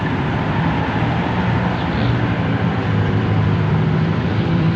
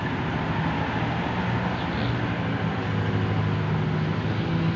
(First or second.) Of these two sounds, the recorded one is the second